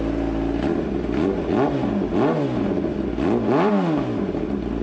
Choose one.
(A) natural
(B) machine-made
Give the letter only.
A